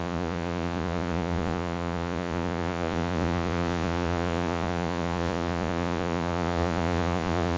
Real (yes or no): no